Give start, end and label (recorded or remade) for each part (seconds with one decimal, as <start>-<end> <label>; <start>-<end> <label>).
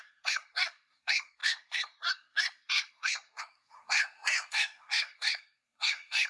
0.0-6.3 remade